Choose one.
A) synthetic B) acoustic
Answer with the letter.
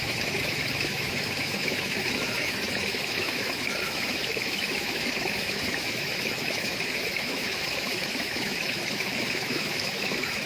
A